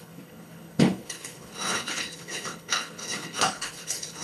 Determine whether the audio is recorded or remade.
remade